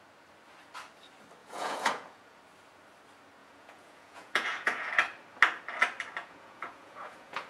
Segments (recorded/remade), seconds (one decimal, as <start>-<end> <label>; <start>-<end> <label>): 0.0-1.4 recorded; 1.4-2.4 remade; 2.4-3.4 recorded; 3.4-4.9 remade; 4.9-6.2 recorded; 6.2-7.5 remade